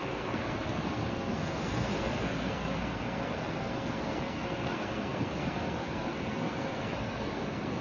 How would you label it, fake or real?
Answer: fake